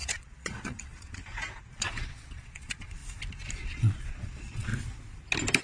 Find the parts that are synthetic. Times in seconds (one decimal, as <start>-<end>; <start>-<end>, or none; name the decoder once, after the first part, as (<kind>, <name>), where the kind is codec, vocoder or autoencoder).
0.0-1.2 (vocoder, Vocos); 1.7-3.0; 3.5-4.7